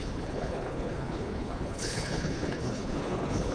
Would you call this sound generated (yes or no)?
yes